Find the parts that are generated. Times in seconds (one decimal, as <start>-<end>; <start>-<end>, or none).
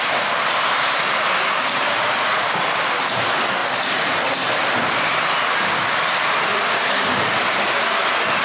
0.0-3.6; 7.2-8.4